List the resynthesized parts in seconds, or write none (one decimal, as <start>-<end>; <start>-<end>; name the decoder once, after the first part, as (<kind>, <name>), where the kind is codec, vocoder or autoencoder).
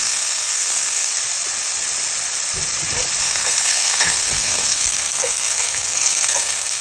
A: 0.0-1.1 (codec, SNAC); 3.2-6.8